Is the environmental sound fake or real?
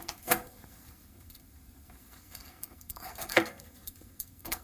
fake